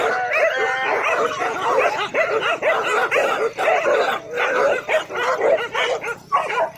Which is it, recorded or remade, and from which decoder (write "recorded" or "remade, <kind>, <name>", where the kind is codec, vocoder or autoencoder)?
recorded